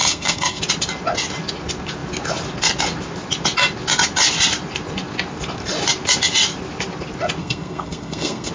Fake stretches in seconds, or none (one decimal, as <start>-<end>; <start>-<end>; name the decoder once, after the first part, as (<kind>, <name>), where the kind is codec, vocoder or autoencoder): 0.0-0.6 (codec, SNAC); 7.4-8.5